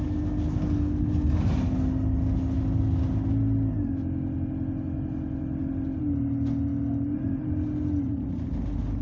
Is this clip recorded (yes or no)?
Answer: yes